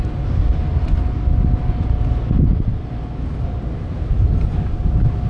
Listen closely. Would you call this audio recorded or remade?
recorded